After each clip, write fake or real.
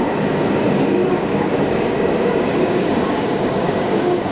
fake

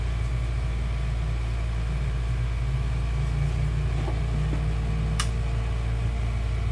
real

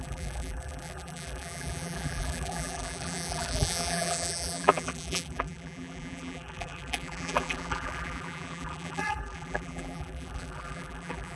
fake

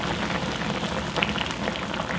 real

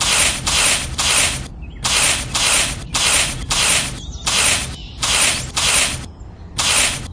real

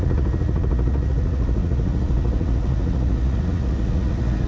fake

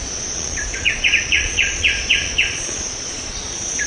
fake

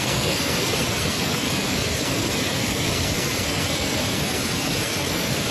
fake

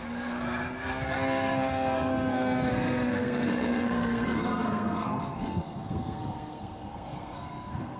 fake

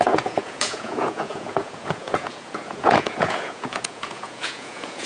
fake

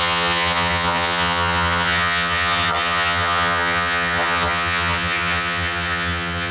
fake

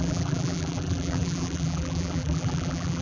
fake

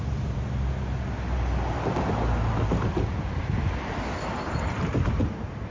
real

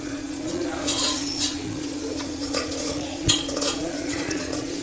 fake